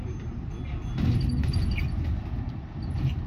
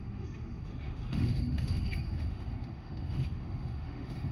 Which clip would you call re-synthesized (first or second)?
second